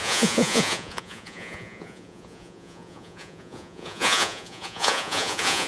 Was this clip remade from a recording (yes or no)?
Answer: yes